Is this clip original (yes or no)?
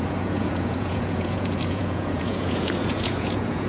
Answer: no